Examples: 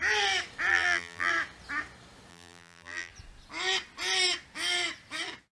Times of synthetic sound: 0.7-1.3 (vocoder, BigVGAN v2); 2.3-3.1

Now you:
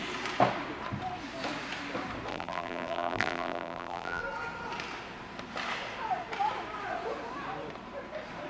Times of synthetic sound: 2.3-4.2 (vocoder, BigVGAN v2)

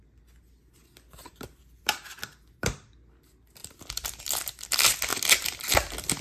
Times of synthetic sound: 1.2-2.7 (vocoder, BigVGAN v2); 3.6-4.2